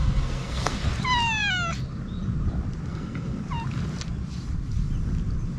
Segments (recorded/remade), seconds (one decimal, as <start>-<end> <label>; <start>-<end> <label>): 0.0-0.8 remade; 0.8-2.9 recorded; 2.9-3.4 remade; 3.4-5.6 recorded